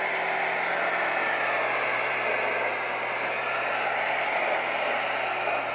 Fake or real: real